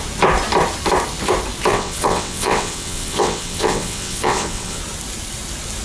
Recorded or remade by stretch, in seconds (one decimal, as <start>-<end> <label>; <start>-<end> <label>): 0.0-1.7 recorded; 1.7-4.8 remade; 4.8-5.8 recorded